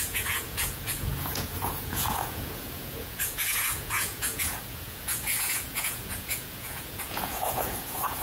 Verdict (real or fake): fake